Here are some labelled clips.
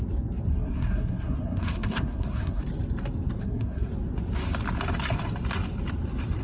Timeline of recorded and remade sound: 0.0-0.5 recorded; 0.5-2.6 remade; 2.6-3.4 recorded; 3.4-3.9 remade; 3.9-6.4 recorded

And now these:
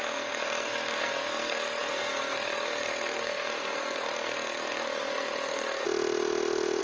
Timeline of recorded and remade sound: 0.0-5.8 remade; 5.8-6.8 recorded

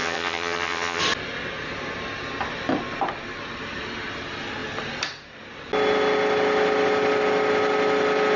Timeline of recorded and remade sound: 0.0-1.0 remade; 1.0-8.4 recorded